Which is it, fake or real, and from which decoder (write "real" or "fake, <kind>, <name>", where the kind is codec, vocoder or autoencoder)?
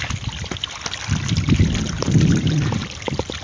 real